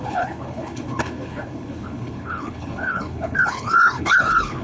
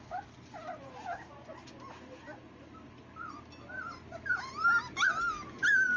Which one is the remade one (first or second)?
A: first